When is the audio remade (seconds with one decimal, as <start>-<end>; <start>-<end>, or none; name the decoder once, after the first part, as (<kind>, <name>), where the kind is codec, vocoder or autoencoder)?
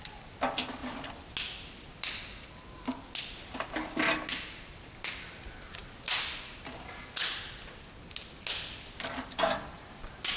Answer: none